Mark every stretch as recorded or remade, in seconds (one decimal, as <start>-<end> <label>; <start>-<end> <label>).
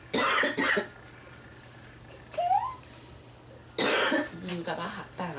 0.0-1.5 recorded; 1.5-3.3 remade; 3.3-4.5 recorded; 4.5-5.4 remade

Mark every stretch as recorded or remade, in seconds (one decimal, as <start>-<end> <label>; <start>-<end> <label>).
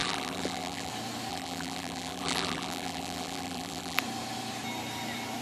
0.0-0.9 remade; 0.9-1.3 recorded; 1.3-4.0 remade; 4.0-5.4 recorded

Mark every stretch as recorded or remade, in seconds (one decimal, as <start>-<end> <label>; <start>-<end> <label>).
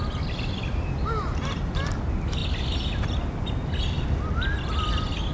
0.0-2.4 remade; 2.4-4.6 recorded; 4.6-5.3 remade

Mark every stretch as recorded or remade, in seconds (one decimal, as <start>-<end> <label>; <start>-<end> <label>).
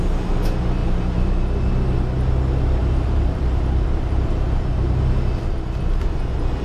0.0-0.8 recorded; 0.8-1.7 remade; 1.7-2.8 recorded; 2.8-5.5 remade; 5.5-6.6 recorded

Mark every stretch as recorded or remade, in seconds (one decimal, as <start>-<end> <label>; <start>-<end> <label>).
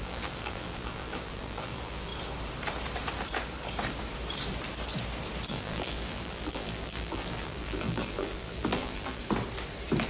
0.0-2.1 remade; 2.1-5.5 recorded; 5.5-9.2 remade; 9.2-10.1 recorded